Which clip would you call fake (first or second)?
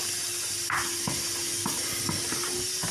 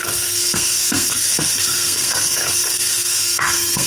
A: second